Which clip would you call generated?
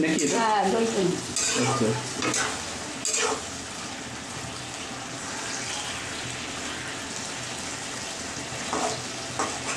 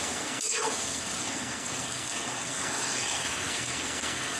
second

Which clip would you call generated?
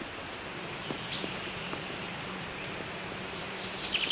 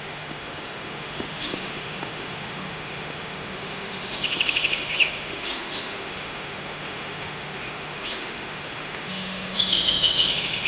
second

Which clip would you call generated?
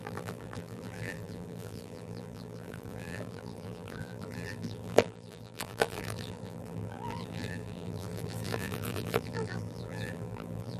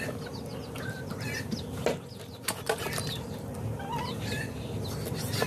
first